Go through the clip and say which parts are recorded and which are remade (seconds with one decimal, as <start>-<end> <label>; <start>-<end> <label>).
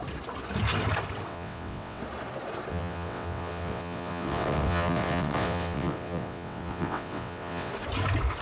0.0-1.3 recorded; 1.3-2.0 remade; 2.0-2.7 recorded; 2.7-7.7 remade; 7.7-8.4 recorded